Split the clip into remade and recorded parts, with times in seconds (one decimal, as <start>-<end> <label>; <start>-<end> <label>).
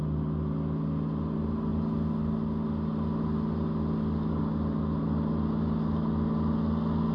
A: 0.0-7.1 recorded